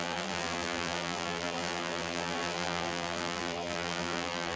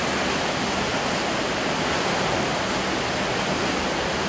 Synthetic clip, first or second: first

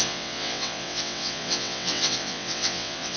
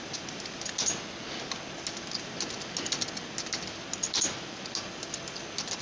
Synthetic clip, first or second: first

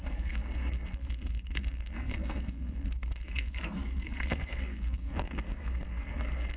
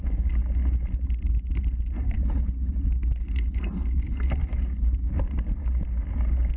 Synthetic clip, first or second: first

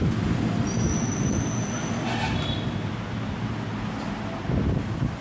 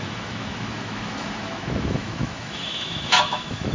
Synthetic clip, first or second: second